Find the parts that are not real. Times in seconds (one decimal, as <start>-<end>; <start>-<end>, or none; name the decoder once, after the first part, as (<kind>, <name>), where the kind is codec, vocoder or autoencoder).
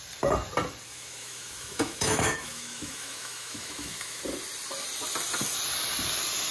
0.9-4.2 (autoencoder, DAC-VAE)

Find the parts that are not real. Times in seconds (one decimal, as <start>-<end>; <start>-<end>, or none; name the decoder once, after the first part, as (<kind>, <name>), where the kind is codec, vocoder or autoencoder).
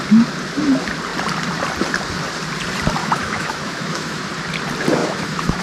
3.0-4.3 (autoencoder, DAC-VAE); 5.0-5.6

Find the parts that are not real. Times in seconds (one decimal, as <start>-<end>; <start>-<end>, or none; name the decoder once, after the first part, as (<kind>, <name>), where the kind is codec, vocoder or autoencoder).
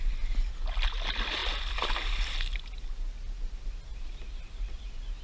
none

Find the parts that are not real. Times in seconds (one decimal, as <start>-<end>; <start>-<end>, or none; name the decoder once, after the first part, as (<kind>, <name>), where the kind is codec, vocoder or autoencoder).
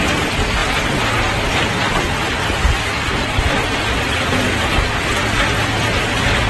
none